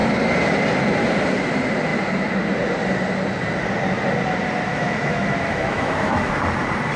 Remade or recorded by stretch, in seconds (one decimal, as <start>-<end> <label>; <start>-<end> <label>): 0.0-4.7 recorded; 4.7-6.4 remade; 6.4-7.0 recorded